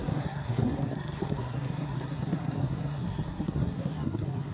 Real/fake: fake